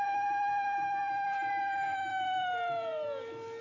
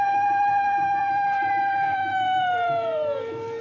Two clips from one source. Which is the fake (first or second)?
second